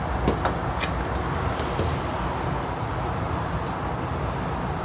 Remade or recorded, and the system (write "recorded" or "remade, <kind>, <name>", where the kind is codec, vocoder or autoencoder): recorded